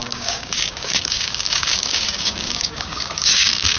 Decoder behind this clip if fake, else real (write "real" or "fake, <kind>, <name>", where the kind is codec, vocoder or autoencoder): fake, codec, DAC